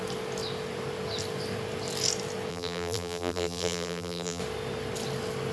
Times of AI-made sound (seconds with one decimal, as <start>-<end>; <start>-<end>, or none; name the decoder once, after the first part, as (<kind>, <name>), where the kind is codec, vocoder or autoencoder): 2.5-4.4 (vocoder, BigVGAN v2)